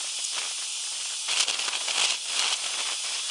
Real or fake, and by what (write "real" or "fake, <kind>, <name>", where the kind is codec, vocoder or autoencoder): real